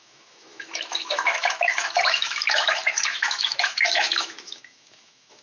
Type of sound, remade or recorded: remade